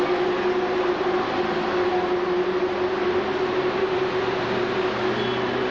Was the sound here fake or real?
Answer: real